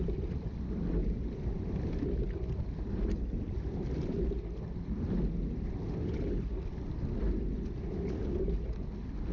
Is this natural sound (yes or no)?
yes